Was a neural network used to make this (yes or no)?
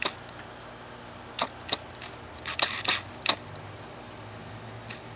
no